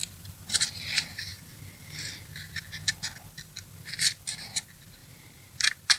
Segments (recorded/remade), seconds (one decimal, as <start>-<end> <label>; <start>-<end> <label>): 0.0-6.0 recorded